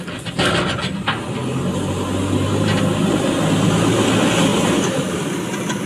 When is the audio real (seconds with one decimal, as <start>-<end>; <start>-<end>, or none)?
0.0-4.5; 5.0-5.9